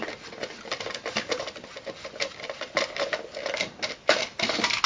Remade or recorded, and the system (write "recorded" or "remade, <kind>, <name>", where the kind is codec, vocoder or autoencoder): recorded